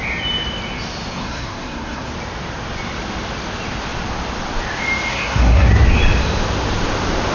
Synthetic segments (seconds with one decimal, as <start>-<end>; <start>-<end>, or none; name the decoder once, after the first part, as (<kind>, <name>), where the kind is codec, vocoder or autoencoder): 1.2-2.1 (codec, SNAC); 5.1-5.7